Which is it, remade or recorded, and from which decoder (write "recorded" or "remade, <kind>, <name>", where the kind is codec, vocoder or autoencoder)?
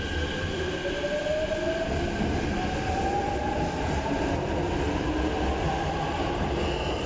recorded